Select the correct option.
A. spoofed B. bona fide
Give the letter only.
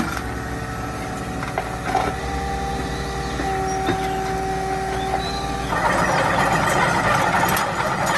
B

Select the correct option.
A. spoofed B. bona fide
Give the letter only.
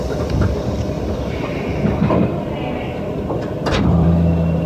A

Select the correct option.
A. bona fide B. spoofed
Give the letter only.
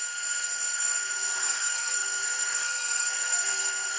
B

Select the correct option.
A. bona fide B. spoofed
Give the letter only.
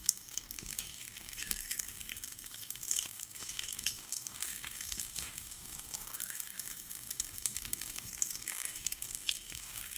B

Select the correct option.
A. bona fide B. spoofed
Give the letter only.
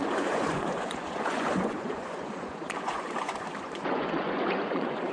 B